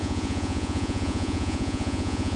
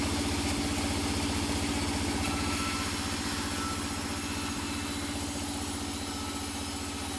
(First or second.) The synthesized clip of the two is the first